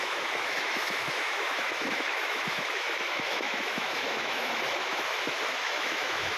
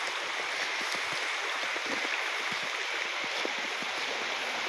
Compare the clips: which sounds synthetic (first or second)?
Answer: first